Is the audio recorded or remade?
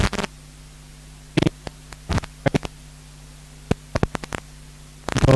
recorded